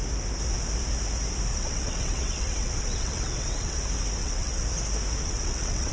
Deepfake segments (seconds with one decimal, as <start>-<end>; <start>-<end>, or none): 1.5-3.8; 4.2-4.7; 5.2-5.9